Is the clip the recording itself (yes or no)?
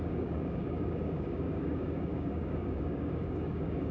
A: no